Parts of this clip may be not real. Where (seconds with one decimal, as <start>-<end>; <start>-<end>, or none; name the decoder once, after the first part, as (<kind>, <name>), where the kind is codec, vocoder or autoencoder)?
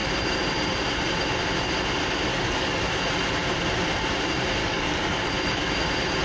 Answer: 2.3-3.0 (codec, DAC); 4.6-5.3